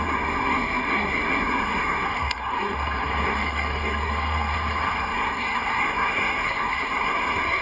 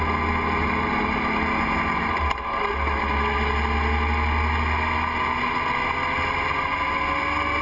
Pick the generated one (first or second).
first